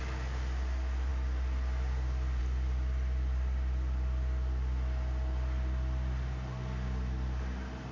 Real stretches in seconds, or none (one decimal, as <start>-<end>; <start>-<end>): 0.0-7.9